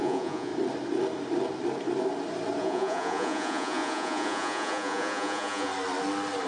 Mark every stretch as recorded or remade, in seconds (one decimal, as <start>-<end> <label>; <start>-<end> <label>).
0.0-0.5 remade; 0.5-2.6 recorded; 2.6-5.7 remade; 5.7-6.5 recorded